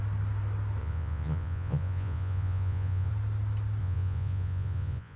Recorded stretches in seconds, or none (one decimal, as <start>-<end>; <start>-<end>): 0.0-0.8; 3.1-3.8